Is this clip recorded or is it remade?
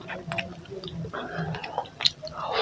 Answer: recorded